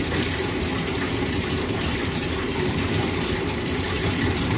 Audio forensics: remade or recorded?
remade